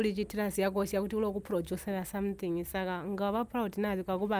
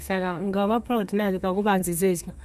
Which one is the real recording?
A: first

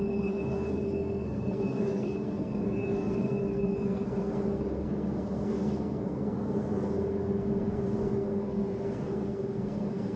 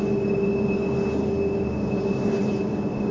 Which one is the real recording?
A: second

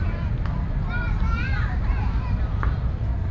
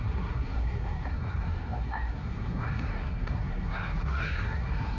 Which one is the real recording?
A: first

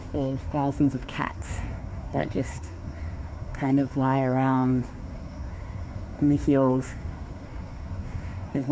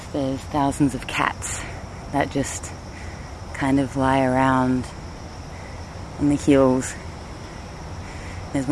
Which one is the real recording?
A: second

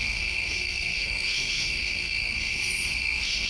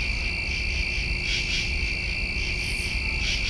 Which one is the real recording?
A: second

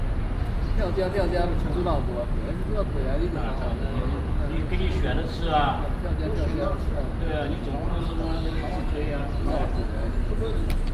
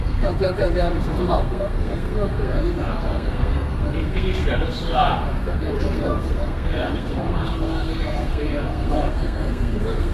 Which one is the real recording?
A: first